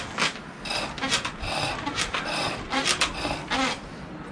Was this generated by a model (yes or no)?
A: no